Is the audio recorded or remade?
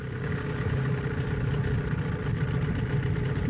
recorded